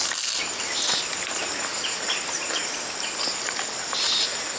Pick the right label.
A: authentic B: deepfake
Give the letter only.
A